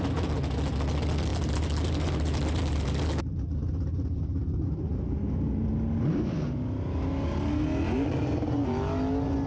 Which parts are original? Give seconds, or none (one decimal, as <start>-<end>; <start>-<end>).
0.0-1.3; 5.7-9.5